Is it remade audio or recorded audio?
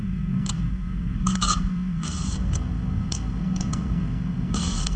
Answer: remade